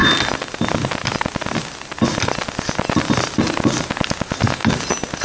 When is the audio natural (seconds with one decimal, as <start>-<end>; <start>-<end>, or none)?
0.0-5.2